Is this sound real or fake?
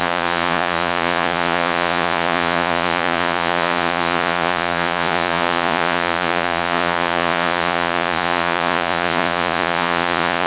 fake